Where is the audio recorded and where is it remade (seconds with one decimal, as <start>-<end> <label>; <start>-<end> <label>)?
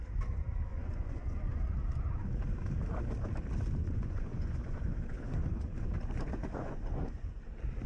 0.0-0.7 recorded; 0.7-1.6 remade; 1.6-3.8 recorded; 3.8-7.4 remade; 7.4-7.9 recorded